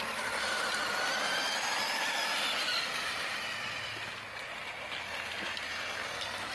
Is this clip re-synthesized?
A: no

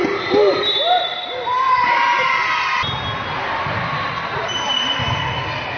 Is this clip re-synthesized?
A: no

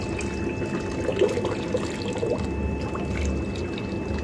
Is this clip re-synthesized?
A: no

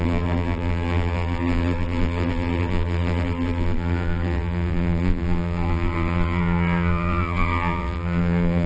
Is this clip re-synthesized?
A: yes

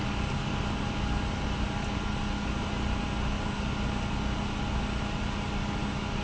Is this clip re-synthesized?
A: no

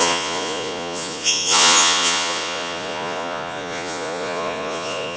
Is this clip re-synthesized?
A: yes